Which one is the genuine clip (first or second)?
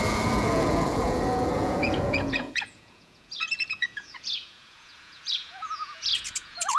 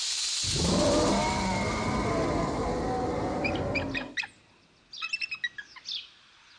second